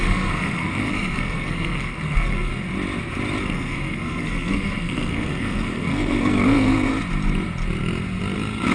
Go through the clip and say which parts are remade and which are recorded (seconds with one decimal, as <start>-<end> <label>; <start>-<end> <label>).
0.0-2.5 remade; 2.5-3.4 recorded; 3.4-6.9 remade; 6.9-8.7 recorded